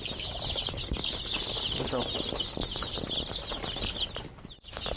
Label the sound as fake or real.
real